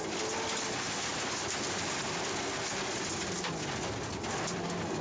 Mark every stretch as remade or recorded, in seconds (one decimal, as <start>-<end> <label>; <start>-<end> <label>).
0.0-5.0 recorded